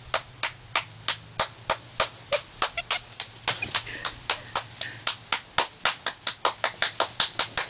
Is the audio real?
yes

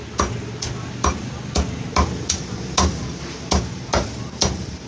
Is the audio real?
yes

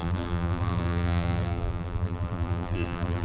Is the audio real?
no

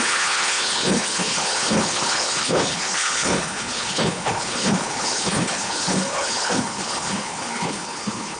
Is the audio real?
no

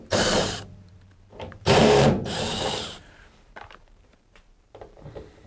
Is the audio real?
no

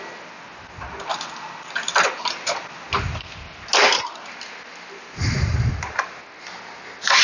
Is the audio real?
yes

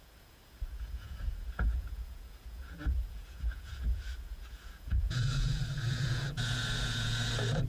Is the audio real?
no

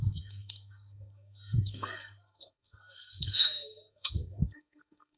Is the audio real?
no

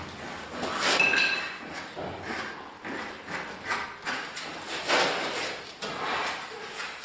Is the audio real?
yes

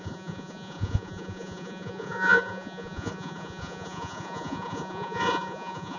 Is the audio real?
no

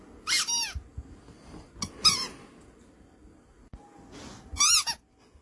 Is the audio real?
yes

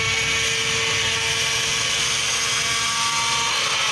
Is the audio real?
yes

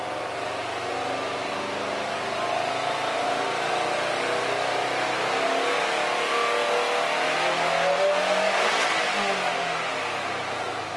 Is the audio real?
yes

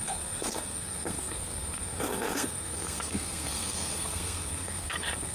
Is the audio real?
no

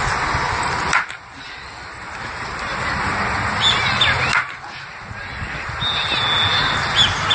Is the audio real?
yes